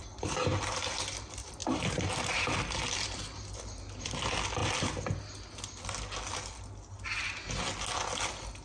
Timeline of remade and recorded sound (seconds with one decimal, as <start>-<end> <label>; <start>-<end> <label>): 0.0-1.6 recorded; 1.6-2.5 remade; 2.5-8.6 recorded